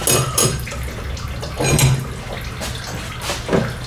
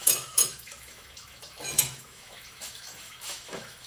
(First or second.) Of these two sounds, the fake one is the second